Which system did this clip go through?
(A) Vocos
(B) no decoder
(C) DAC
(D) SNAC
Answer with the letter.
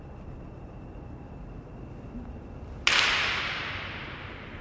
B